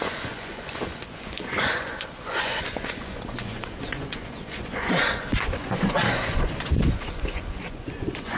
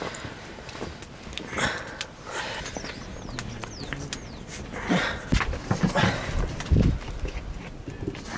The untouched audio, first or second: second